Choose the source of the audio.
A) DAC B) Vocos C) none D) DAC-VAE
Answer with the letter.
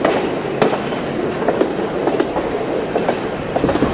C